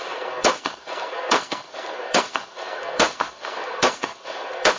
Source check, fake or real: fake